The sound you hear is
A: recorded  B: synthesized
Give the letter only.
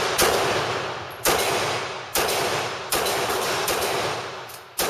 A